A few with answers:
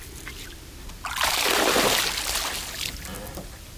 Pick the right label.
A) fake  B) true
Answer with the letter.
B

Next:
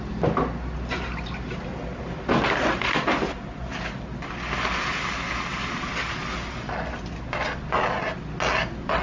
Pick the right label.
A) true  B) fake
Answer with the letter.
A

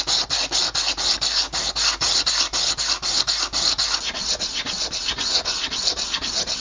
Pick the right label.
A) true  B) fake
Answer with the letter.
A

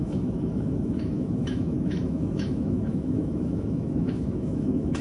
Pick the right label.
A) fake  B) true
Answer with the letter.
A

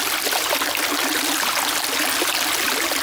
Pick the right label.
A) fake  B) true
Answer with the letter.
B